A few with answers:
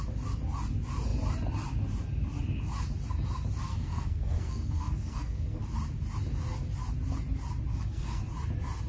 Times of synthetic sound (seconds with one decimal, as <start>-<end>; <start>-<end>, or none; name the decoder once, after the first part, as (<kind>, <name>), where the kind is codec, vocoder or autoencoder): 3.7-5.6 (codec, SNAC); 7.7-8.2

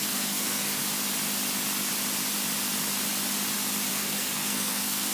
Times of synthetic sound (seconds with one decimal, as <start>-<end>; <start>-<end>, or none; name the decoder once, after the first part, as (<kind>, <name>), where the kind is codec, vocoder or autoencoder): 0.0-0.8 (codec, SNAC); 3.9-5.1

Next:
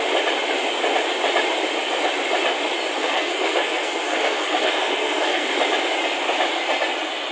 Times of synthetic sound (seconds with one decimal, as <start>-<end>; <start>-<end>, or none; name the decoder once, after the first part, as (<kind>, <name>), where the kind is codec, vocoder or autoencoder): 3.0-5.5 (codec, SNAC)

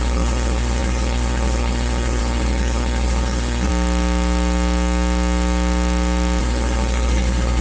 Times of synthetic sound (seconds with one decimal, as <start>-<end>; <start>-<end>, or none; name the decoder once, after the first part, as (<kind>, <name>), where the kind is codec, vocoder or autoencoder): 0.0-3.7 (codec, SNAC); 6.4-7.6

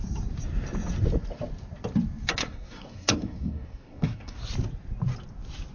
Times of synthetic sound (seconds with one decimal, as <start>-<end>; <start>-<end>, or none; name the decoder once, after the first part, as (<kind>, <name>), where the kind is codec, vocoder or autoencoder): 2.4-4.4 (codec, SNAC)

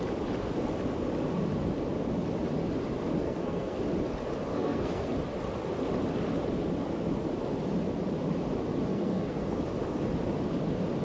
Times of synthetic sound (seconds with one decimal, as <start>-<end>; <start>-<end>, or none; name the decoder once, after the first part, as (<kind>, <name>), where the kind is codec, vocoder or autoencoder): 3.2-3.8 (codec, SNAC); 4.5-5.1; 8.9-9.6

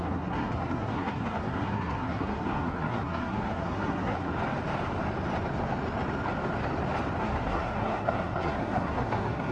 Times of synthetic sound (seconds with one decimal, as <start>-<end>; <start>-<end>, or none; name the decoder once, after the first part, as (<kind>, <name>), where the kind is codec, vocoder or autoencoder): 0.0-4.3 (codec, SNAC); 7.2-9.5

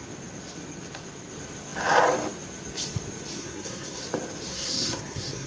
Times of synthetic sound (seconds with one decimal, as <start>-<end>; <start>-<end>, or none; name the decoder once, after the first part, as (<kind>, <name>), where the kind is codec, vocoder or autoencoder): 3.4-4.0 (codec, SNAC); 4.5-5.5